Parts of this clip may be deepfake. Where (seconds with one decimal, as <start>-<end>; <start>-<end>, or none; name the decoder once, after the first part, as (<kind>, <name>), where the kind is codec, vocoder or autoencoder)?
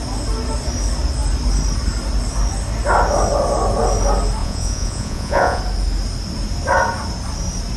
4.4-5.6 (vocoder, Vocos)